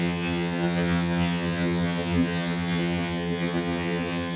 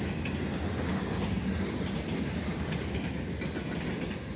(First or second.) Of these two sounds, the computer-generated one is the first